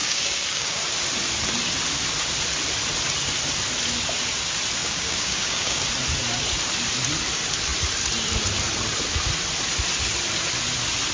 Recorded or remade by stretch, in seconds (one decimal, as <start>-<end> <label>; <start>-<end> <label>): 0.0-0.8 remade; 0.8-4.8 recorded; 4.8-5.8 remade; 5.8-11.1 recorded